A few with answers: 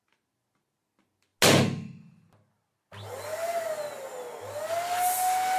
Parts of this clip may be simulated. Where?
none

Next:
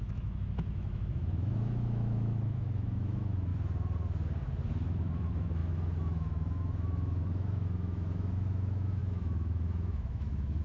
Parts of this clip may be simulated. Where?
0.0-3.5 (autoencoder, DAC-VAE); 5.0-10.6